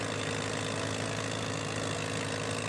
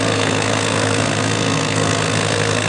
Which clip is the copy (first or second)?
second